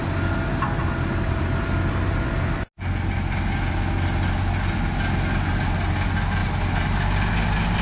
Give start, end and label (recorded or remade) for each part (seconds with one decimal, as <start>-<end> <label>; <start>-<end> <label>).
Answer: 0.0-7.8 recorded